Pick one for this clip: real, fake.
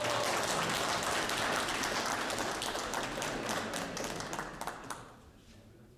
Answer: real